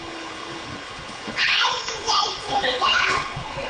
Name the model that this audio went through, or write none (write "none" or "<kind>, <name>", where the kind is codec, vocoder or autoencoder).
codec, HILCodec